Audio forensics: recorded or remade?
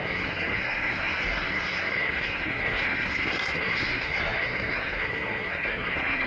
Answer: remade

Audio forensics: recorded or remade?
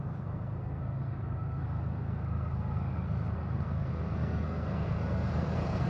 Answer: remade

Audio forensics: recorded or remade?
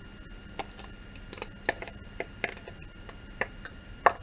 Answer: recorded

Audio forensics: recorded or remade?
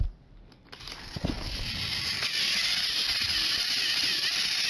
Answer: recorded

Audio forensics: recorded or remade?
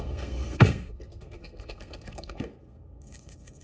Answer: remade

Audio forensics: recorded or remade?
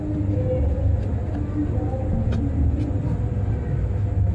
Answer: recorded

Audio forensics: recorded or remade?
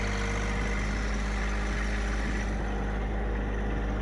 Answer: recorded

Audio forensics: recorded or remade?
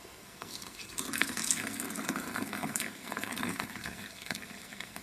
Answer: remade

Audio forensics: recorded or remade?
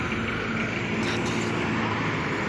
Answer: recorded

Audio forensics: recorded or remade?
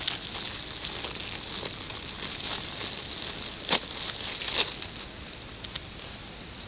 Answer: recorded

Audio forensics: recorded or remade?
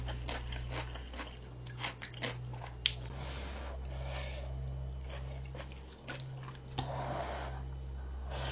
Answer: recorded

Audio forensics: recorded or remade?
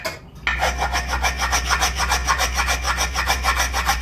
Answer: recorded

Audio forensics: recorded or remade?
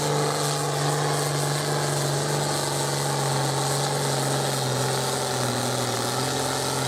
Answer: recorded